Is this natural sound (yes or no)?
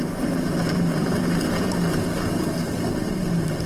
yes